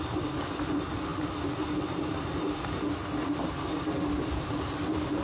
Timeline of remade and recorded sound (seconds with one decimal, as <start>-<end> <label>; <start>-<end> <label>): 0.0-5.2 recorded